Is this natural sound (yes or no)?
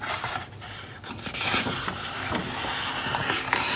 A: yes